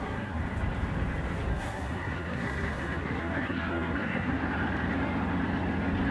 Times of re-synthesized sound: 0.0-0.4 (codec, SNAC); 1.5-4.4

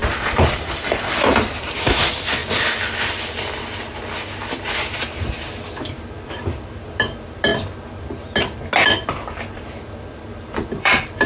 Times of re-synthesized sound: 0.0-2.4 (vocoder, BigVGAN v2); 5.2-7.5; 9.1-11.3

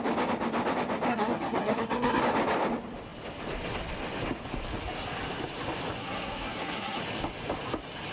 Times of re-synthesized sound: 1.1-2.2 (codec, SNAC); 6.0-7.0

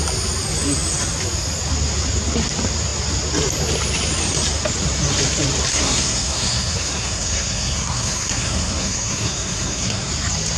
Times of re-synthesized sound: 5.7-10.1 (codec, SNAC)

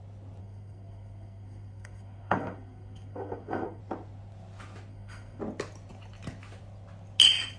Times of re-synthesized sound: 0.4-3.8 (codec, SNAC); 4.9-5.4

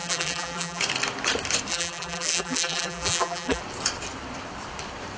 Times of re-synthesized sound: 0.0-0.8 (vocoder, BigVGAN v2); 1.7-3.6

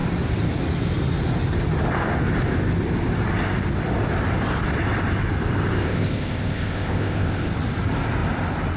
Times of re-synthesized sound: 5.7-7.5 (codec, ZipCodec)

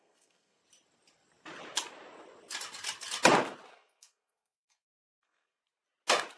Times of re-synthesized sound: 0.0-0.6 (codec, SNAC); 3.7-5.6